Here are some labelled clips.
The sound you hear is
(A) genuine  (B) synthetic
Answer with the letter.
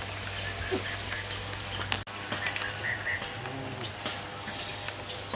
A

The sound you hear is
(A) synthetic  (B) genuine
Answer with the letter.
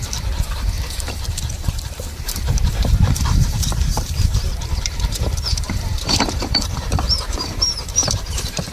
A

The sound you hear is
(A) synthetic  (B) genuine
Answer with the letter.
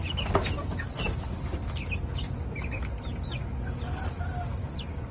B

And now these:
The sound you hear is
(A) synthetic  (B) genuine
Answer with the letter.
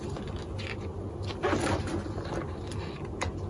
B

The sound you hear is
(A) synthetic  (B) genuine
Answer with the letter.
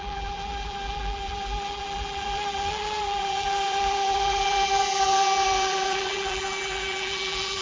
A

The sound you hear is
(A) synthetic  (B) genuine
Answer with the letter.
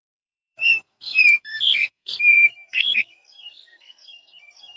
A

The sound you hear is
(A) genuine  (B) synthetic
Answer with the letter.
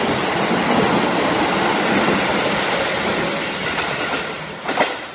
A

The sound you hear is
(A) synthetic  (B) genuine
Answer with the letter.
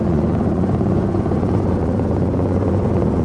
A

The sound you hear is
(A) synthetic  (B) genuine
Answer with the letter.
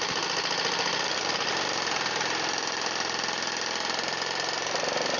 B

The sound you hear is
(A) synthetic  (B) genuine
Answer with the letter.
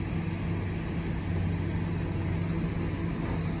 B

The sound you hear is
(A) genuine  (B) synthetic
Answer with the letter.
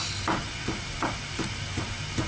A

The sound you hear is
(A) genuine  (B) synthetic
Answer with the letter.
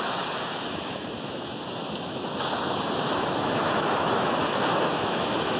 B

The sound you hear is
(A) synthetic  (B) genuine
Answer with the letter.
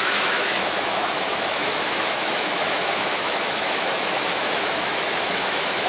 A